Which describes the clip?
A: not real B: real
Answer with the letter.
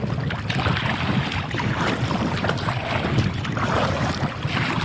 B